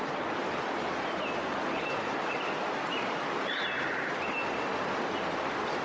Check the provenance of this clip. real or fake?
real